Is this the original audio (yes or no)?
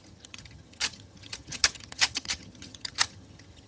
no